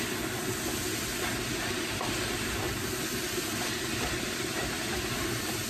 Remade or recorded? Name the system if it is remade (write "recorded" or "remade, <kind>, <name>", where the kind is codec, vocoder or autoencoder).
recorded